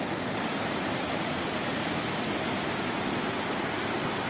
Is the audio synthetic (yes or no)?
no